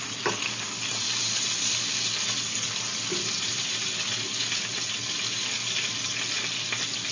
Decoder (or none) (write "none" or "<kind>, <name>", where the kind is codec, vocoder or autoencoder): none